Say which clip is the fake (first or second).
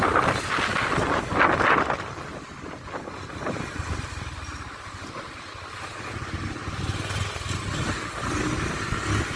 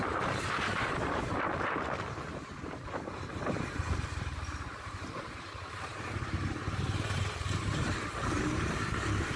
second